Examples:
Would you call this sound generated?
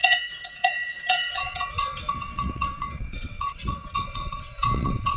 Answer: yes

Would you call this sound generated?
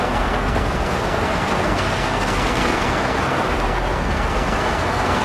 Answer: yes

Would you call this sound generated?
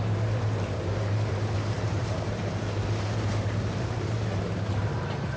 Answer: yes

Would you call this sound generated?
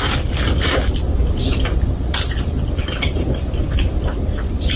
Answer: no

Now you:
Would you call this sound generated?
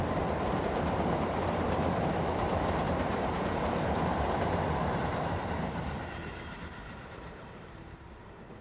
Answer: yes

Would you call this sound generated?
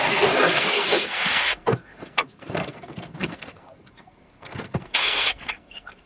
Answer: yes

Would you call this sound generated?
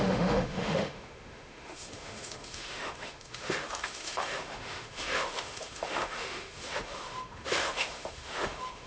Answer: yes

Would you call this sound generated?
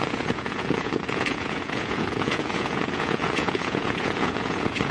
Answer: yes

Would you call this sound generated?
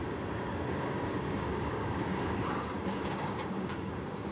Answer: yes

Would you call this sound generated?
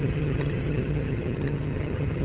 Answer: yes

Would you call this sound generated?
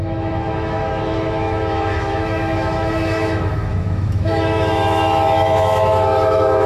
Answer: yes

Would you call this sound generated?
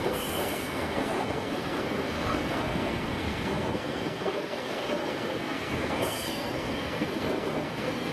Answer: yes